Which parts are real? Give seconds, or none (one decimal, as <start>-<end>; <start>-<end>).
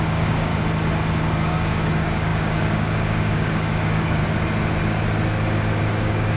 0.5-1.2; 4.2-5.9